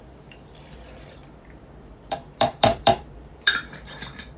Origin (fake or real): fake